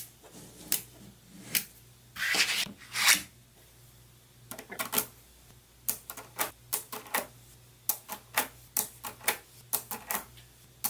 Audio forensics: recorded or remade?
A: recorded